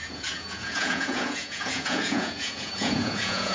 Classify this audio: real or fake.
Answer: fake